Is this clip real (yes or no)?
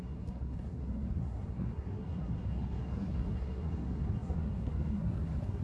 no